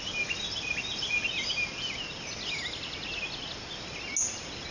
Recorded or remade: recorded